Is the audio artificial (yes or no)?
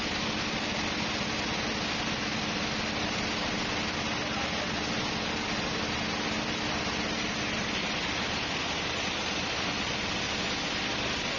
no